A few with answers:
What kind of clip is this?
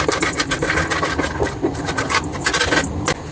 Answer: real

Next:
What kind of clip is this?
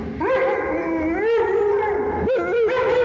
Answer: real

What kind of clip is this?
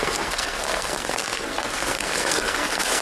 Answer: fake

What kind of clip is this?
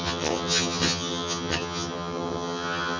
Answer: fake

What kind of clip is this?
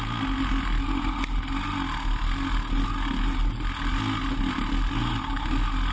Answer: real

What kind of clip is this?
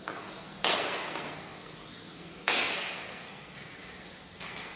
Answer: fake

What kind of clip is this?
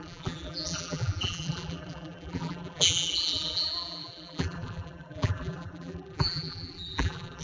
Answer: fake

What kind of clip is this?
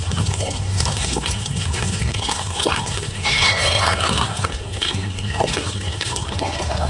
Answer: fake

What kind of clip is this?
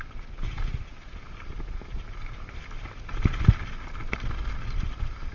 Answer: real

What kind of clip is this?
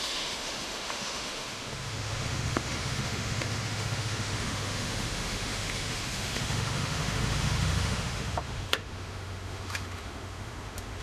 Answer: fake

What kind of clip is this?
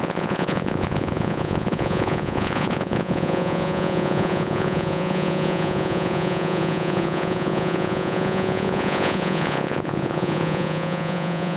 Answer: fake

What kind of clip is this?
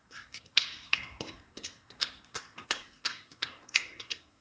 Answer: fake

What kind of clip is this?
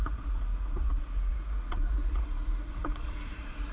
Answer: fake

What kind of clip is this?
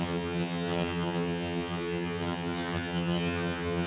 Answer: fake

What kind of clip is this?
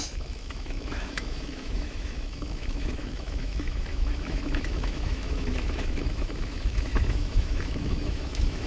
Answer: fake